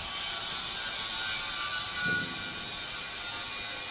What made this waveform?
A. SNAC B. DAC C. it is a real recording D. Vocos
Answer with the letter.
C